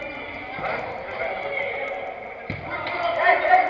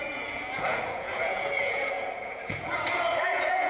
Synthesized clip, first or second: second